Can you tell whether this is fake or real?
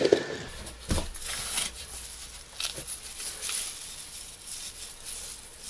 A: real